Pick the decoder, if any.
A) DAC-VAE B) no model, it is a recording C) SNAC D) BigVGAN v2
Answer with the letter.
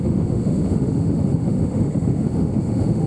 A